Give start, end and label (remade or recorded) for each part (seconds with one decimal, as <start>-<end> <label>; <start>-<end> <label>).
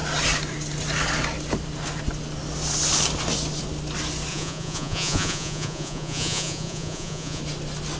0.0-4.3 recorded; 4.3-7.4 remade; 7.4-8.0 recorded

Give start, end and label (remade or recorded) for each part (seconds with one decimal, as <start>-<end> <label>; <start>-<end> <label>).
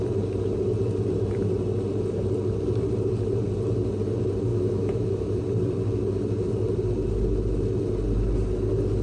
0.0-4.5 recorded; 4.5-5.4 remade; 5.4-9.0 recorded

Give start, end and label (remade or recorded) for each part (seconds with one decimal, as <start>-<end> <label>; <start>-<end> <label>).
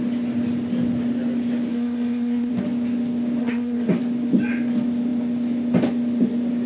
0.0-1.7 recorded; 1.7-2.5 remade; 2.5-3.4 recorded; 3.4-4.0 remade; 4.0-6.7 recorded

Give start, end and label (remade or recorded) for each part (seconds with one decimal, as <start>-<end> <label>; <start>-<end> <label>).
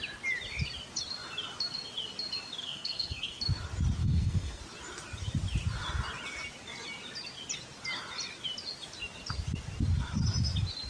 0.0-2.6 recorded; 2.6-3.4 remade; 3.4-4.0 recorded; 4.0-4.6 remade; 4.6-10.9 recorded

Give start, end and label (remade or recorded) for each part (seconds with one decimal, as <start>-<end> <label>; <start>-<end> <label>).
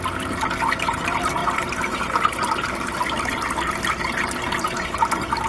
0.0-1.4 recorded; 1.4-4.0 remade; 4.0-5.5 recorded